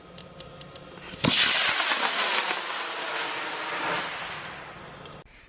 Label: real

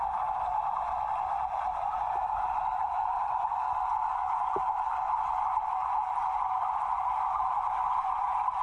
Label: real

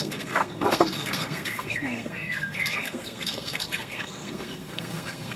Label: fake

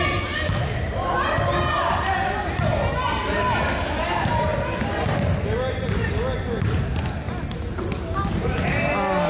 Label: real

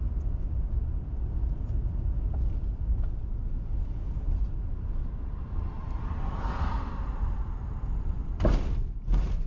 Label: real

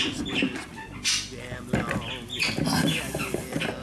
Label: real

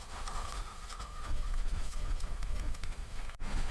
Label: fake